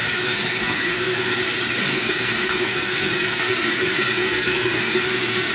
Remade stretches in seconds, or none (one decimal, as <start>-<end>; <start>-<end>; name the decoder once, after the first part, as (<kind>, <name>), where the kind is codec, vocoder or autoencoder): 0.0-1.4 (codec, SNAC); 1.9-5.5

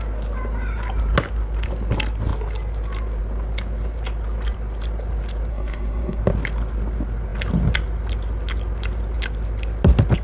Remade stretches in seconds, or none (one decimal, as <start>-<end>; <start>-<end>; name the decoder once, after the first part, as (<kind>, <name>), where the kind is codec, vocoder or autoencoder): 5.5-6.2 (codec, SNAC)

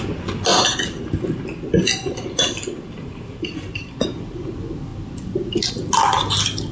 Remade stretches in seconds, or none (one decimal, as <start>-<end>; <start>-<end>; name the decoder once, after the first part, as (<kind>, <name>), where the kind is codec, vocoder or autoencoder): none

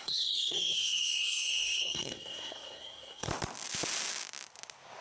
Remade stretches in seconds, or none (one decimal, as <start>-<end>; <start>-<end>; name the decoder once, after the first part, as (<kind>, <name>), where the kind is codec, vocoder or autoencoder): 0.0-3.3 (codec, SNAC)

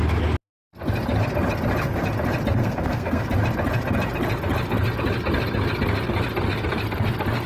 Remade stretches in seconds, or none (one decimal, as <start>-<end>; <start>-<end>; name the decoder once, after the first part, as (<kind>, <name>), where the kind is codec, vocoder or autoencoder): 2.6-3.2 (codec, SNAC)

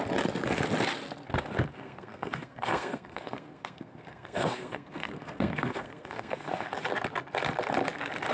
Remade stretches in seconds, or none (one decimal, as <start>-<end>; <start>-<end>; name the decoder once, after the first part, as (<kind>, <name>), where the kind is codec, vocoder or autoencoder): 1.7-6.7 (codec, SNAC)

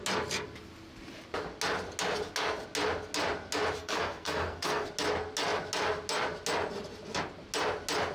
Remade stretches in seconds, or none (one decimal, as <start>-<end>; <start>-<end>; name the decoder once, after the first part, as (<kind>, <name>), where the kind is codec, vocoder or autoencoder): 3.8-4.9 (codec, SNAC)

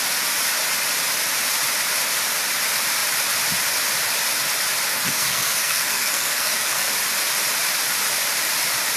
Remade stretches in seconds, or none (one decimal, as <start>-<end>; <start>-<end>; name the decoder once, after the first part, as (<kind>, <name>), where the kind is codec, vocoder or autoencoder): 4.9-6.9 (codec, SNAC)